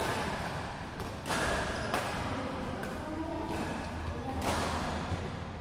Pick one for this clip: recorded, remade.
recorded